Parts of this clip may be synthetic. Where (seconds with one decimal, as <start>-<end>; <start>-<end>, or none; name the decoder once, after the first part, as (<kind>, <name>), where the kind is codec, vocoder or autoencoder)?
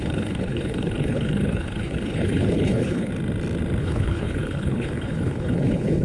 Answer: 0.0-3.1 (codec, HILCodec); 3.8-6.0